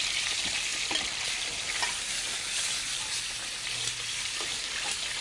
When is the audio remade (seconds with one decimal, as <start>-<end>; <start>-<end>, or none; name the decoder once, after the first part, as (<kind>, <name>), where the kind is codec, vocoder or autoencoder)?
none